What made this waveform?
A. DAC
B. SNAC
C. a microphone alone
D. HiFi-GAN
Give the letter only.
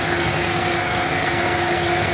B